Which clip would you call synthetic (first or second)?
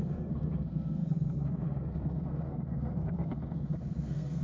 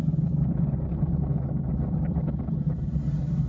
first